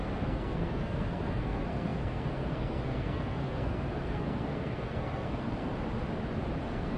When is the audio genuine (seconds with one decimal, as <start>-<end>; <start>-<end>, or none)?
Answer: 5.7-6.6